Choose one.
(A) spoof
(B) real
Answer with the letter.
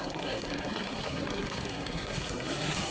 A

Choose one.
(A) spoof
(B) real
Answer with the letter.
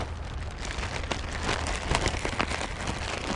B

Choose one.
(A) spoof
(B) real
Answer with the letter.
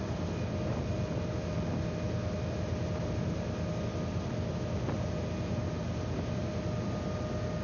B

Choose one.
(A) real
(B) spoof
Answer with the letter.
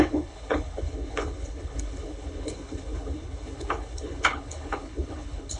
B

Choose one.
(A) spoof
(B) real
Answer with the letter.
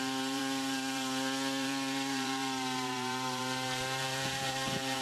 A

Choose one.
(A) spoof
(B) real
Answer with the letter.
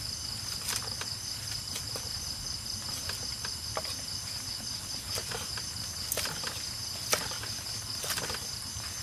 B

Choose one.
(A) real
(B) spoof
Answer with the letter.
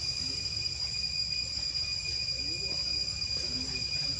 A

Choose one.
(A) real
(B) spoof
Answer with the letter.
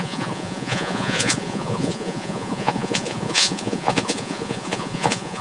B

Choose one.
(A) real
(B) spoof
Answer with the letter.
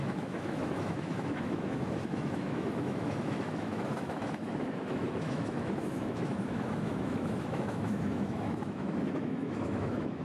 B